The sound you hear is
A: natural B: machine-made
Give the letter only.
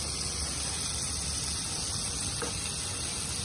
A